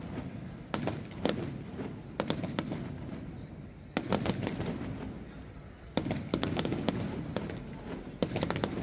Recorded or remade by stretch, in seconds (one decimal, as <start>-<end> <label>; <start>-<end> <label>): 0.0-6.3 recorded; 6.3-6.9 remade; 6.9-8.8 recorded